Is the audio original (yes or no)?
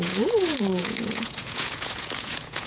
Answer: no